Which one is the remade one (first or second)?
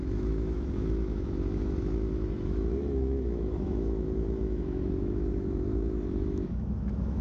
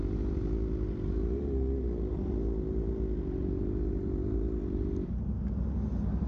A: first